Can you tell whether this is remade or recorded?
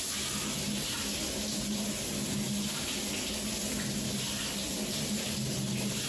recorded